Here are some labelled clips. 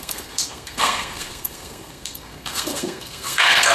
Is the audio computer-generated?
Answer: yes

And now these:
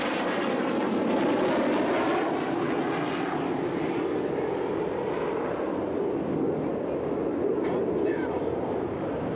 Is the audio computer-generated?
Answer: no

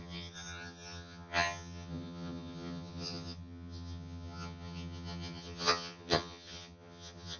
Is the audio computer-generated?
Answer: yes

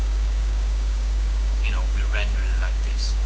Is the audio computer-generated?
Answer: yes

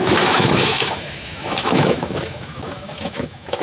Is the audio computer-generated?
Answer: yes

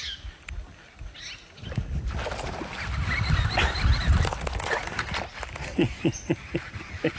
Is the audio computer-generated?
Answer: no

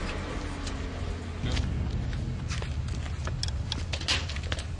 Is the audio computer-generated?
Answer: no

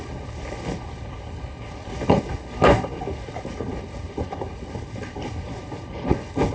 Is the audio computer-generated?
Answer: yes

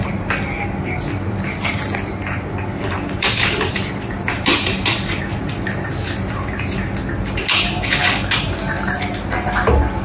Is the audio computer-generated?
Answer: no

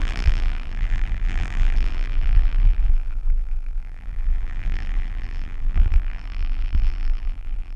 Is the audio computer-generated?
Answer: yes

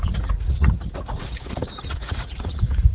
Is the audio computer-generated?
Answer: yes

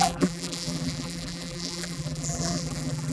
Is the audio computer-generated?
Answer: yes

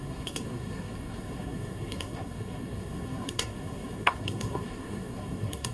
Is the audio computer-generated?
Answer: yes